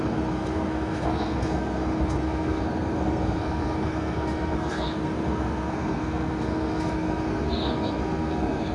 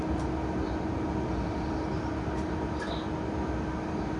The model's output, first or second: first